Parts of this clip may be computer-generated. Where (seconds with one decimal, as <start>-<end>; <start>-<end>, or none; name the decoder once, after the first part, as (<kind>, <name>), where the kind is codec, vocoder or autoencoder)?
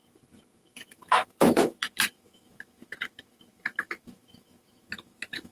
0.0-5.5 (autoencoder, DAC-VAE)